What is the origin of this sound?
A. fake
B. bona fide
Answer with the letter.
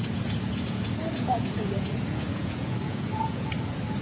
A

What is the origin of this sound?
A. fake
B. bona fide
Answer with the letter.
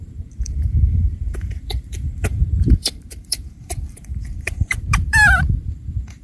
A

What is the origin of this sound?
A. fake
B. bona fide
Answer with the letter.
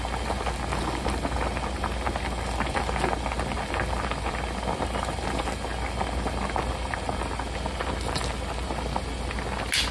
B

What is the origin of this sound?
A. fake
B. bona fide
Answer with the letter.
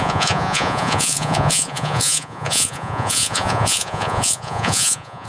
A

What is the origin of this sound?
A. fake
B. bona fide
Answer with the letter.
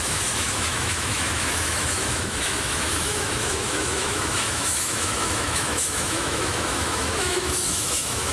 A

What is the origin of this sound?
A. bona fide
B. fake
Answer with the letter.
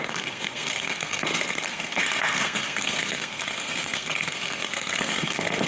B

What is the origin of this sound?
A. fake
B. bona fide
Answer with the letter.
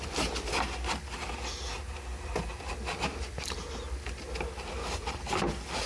B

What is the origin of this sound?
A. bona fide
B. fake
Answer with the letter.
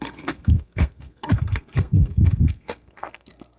B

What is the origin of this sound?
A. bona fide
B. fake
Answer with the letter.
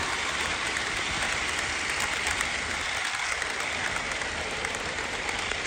B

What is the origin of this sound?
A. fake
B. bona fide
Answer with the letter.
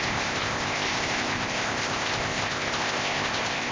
A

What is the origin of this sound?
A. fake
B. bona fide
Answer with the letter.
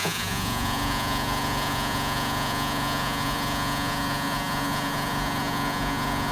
A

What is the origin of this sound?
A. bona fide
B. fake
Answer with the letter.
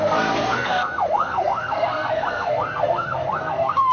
B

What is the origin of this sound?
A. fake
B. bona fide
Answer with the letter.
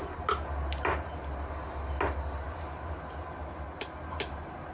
B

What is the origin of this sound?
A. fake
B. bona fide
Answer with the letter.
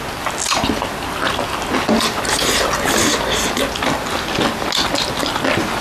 B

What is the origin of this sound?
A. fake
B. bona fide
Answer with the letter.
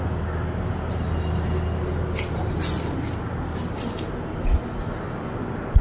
B